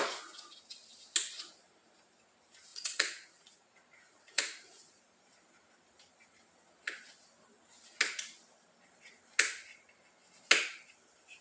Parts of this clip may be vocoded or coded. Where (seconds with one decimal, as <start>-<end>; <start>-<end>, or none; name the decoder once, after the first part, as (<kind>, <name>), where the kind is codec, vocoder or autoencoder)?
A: 2.7-5.0 (vocoder, Vocos)